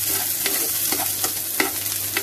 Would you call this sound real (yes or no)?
yes